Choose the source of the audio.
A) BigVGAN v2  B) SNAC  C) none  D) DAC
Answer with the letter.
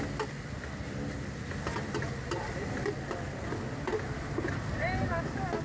C